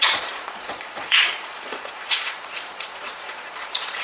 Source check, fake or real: fake